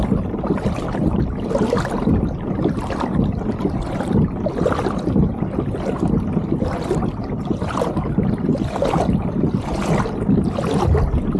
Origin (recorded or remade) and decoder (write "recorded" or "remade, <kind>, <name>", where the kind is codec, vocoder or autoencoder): recorded